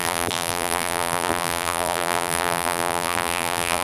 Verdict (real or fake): fake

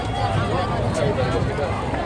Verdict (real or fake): real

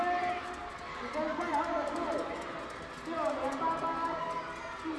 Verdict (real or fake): real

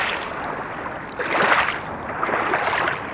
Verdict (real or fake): real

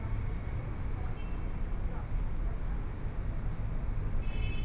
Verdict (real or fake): real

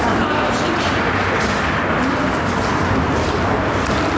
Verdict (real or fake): real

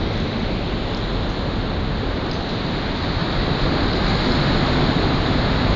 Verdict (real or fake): real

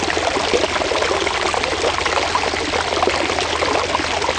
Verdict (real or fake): real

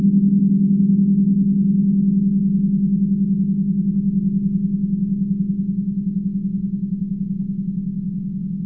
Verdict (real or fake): real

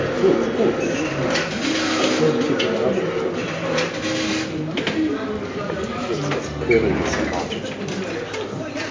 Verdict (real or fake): real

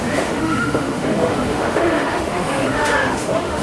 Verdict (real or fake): fake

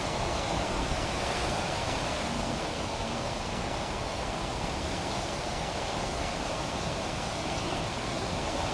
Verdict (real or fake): fake